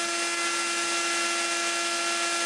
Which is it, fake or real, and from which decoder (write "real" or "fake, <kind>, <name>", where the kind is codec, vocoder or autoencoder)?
real